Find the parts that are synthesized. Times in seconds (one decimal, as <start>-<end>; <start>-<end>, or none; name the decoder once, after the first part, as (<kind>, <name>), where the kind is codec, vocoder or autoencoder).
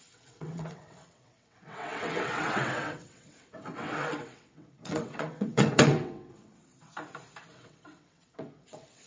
0.0-6.9 (vocoder, WaveNeXt); 7.5-9.1